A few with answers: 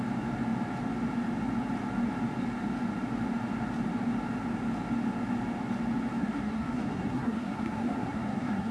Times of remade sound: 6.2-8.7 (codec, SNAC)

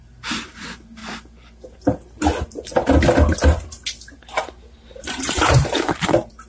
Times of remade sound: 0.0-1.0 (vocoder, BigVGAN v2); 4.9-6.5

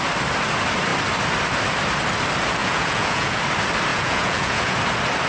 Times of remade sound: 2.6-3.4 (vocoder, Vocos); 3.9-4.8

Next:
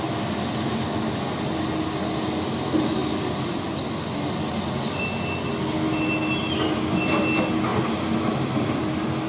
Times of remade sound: none

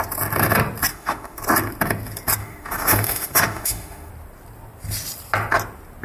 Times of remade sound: 0.9-1.4 (autoencoder, DAC-VAE); 2.4-4.1

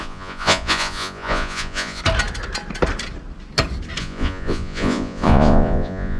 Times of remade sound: 0.0-2.0 (vocoder, Vocos); 4.0-6.2